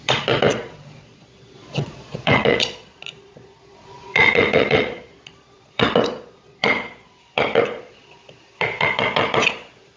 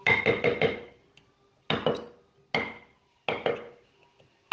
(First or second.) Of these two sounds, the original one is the second